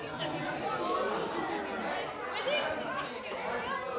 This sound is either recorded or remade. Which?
recorded